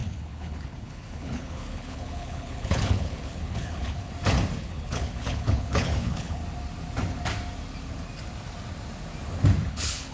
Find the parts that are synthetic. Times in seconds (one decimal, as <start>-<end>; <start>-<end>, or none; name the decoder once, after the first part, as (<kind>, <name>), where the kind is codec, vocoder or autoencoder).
0.0-4.1 (codec, HILCodec); 4.6-6.4; 9.7-10.1